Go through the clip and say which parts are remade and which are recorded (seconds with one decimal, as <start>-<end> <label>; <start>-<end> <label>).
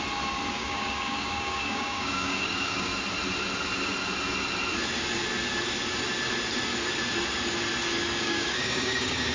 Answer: 0.0-0.5 recorded; 0.5-2.9 remade; 2.9-8.2 recorded; 8.2-9.3 remade